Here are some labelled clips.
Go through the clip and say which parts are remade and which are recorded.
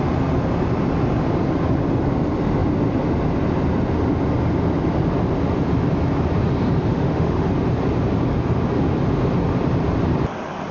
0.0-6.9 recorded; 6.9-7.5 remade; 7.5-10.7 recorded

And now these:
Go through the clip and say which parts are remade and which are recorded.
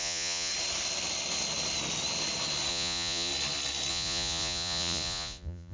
0.0-0.5 remade; 0.5-2.7 recorded; 2.7-3.3 remade; 3.3-3.9 recorded; 3.9-5.7 remade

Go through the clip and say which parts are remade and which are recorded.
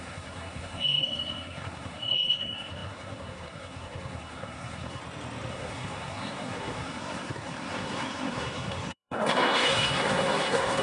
0.0-5.0 remade; 5.0-5.5 recorded; 5.5-10.8 remade